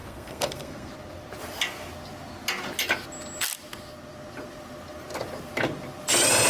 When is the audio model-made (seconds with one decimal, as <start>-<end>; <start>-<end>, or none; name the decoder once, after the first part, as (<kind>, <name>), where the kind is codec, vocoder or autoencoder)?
0.0-0.9 (codec, SNAC)